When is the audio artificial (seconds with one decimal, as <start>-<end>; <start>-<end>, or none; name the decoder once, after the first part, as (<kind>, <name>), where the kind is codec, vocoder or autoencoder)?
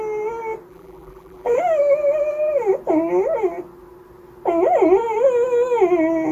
0.7-1.6 (vocoder, BigVGAN v2)